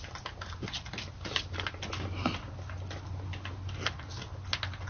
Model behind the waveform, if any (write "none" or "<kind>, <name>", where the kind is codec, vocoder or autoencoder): none